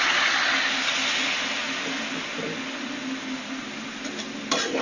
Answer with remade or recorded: recorded